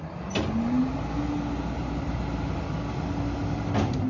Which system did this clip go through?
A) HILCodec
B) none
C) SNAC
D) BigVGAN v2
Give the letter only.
B